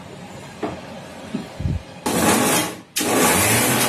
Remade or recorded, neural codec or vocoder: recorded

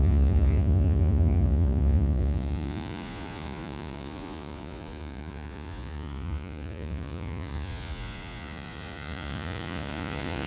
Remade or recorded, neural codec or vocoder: remade, vocoder, Vocos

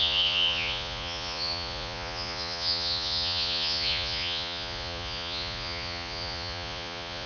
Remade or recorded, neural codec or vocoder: remade, vocoder, Vocos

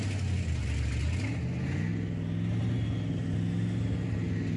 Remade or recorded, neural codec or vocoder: recorded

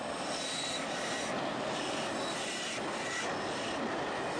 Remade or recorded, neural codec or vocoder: recorded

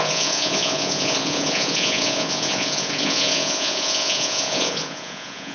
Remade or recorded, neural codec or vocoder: remade, vocoder, Vocos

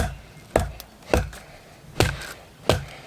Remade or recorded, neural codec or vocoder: recorded